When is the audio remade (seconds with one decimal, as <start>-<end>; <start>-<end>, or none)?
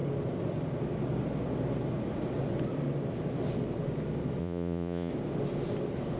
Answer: 4.4-5.1